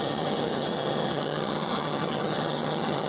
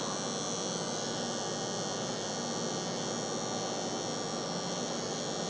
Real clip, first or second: second